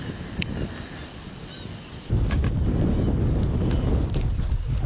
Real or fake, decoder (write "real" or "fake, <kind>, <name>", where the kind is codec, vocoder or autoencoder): real